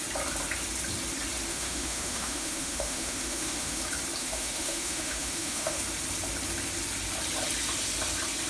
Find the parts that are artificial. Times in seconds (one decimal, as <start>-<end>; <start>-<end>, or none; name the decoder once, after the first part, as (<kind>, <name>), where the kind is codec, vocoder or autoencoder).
1.5-3.8 (autoencoder, DAC-VAE); 4.2-5.8